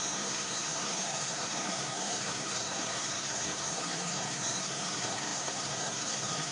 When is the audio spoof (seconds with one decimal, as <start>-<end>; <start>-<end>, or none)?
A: 0.0-6.5